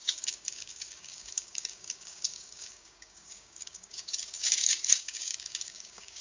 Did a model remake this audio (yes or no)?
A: yes